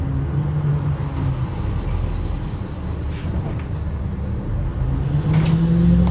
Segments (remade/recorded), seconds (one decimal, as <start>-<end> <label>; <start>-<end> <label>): 0.0-6.1 recorded